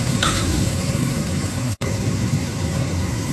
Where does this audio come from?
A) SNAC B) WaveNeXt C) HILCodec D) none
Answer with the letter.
A